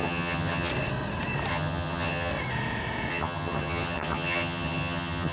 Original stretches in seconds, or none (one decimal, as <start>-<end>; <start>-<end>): 0.7-1.5; 2.3-3.1